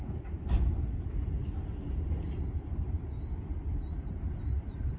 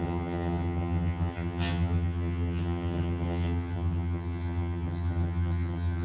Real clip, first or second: first